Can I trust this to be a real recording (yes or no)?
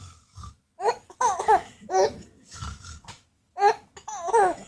no